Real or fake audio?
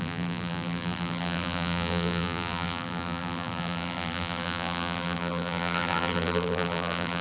fake